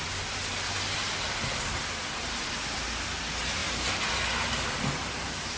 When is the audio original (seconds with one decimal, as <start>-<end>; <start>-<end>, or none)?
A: 0.0-5.6